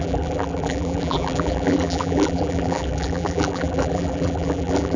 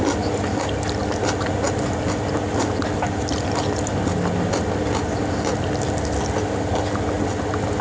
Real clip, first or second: second